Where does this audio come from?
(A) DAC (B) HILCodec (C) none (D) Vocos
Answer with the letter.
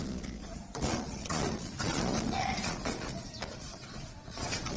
D